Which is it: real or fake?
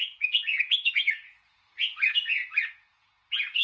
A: fake